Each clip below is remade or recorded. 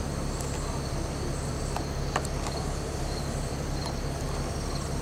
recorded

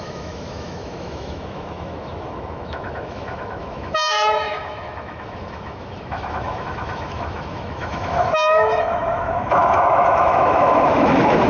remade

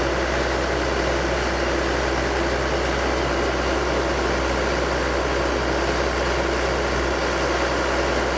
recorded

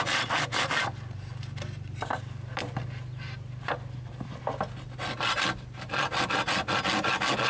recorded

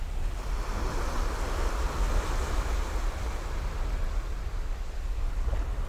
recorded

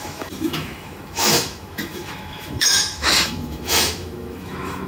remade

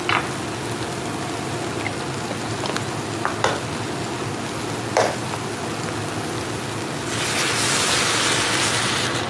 recorded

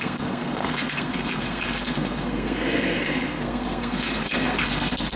remade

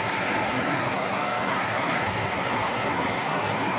remade